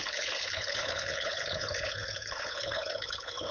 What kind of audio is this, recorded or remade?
remade